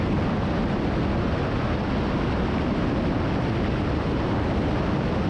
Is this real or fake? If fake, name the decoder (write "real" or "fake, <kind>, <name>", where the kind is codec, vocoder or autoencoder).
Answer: real